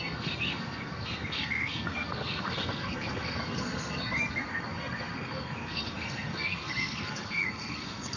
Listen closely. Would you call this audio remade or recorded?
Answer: remade